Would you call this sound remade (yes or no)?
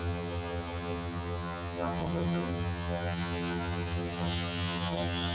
yes